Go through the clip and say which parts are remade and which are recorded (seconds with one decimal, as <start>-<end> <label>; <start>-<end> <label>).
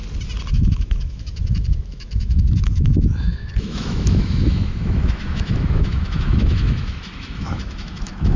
0.0-0.5 recorded; 0.5-8.4 remade